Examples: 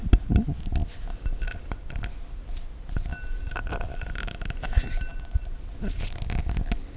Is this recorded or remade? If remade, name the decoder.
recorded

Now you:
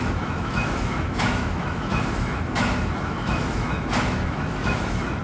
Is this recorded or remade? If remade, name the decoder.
remade, autoencoder, DAC-VAE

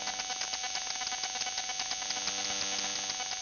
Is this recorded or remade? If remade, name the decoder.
recorded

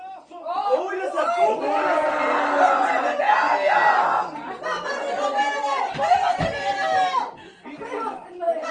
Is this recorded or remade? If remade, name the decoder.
recorded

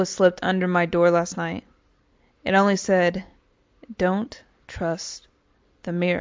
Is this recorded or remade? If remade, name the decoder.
recorded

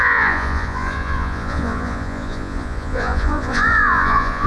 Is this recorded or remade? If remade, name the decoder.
remade, vocoder, Vocos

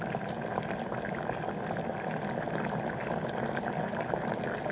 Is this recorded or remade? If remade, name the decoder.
recorded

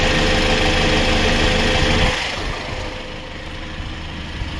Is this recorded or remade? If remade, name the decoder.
recorded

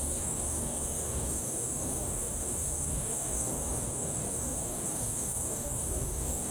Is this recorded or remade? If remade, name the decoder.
remade, codec, DAC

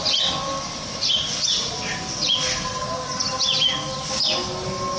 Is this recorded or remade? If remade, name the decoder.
recorded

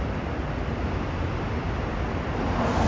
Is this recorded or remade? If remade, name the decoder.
recorded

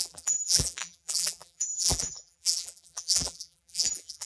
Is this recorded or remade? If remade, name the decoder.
remade, vocoder, BigVGAN v2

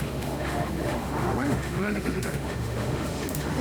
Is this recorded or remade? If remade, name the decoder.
remade, autoencoder, DAC-VAE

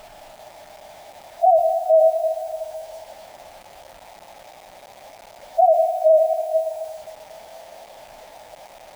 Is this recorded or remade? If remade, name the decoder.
remade, autoencoder, DAC-VAE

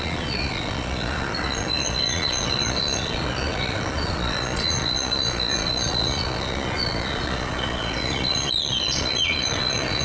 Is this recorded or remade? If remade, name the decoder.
remade, vocoder, Vocos